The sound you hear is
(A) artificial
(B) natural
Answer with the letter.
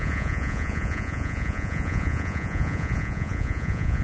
A